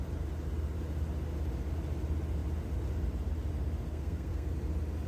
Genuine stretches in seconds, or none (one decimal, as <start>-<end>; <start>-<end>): 0.0-3.9; 4.5-5.1